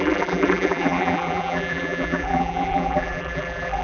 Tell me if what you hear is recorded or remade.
remade